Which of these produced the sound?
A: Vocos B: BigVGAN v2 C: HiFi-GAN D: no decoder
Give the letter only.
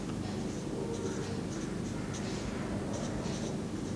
D